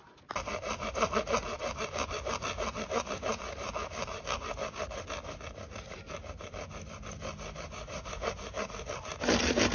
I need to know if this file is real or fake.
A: real